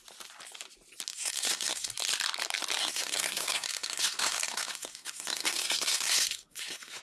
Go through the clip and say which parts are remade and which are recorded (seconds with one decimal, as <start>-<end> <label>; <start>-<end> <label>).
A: 0.0-1.1 recorded; 1.1-1.9 remade; 1.9-2.8 recorded; 2.8-7.0 remade